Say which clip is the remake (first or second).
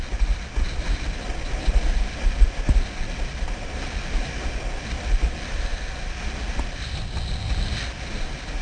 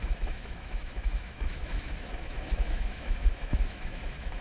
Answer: second